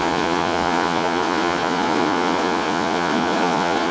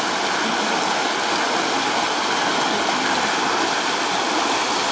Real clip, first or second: second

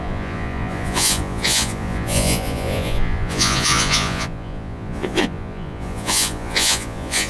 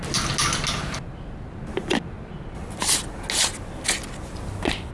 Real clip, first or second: second